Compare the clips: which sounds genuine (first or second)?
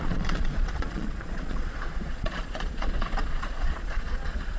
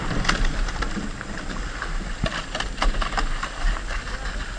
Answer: second